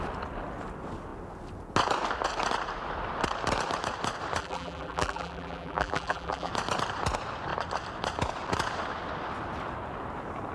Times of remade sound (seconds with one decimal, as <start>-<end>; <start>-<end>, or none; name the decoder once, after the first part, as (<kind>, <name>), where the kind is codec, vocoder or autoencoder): 4.4-6.5 (vocoder, BigVGAN v2)